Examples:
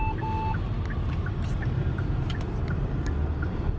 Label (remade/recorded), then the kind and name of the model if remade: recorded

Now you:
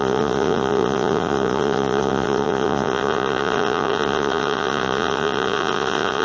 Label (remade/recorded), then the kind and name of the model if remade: remade, vocoder, Vocos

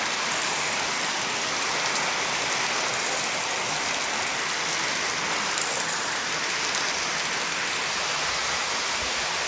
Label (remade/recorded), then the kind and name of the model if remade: recorded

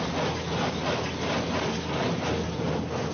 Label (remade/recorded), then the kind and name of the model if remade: recorded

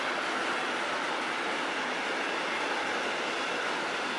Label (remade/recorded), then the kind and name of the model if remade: recorded